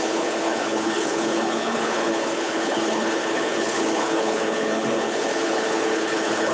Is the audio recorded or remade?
remade